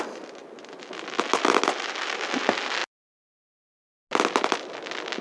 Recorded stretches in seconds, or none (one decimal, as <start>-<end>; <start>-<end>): 0.0-5.2